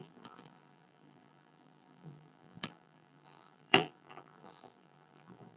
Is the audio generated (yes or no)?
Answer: yes